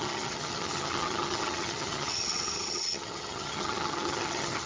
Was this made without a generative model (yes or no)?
no